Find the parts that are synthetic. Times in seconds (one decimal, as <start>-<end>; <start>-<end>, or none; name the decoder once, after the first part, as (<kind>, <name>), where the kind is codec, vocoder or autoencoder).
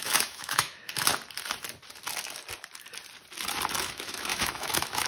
0.0-1.1 (autoencoder, DAC-VAE); 3.8-5.1